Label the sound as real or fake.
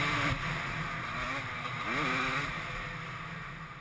real